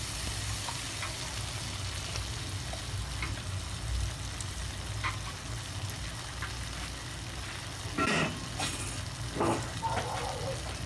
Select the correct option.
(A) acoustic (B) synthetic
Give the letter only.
A